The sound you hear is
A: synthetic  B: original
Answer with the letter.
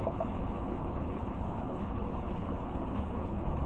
A